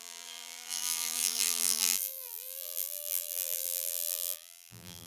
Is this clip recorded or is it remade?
remade